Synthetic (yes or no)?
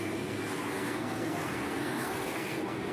yes